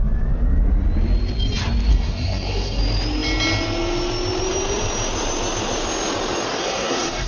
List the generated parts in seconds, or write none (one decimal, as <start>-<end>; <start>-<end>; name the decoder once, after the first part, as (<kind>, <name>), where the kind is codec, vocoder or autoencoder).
1.9-2.8 (codec, SNAC); 6.6-7.3